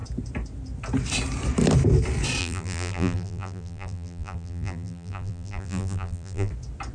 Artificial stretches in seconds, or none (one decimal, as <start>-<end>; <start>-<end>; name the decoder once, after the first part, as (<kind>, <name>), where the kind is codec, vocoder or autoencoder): 2.4-6.5 (vocoder, BigVGAN v2)